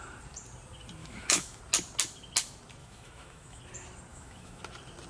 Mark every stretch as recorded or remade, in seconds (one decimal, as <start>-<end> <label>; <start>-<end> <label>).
0.0-1.0 recorded; 1.0-1.6 remade; 1.6-2.8 recorded; 2.8-3.6 remade; 3.6-4.1 recorded; 4.1-4.6 remade; 4.6-5.1 recorded